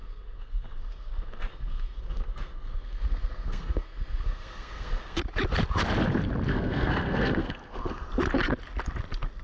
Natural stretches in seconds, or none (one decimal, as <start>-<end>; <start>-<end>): 5.2-6.5; 8.1-9.4